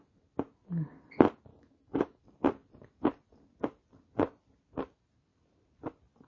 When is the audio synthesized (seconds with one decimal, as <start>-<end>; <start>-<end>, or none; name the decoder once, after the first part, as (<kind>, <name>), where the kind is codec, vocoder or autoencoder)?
1.5-2.2 (autoencoder, DAC-VAE)